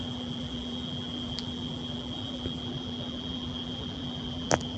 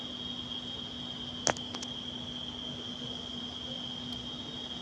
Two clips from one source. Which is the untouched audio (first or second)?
second